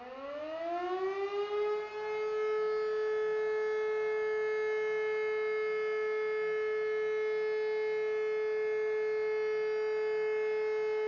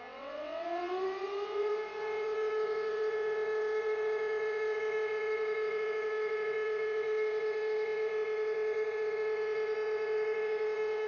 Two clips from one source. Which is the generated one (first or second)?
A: second